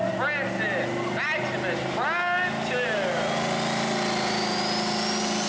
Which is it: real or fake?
real